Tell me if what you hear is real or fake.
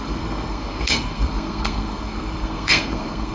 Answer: fake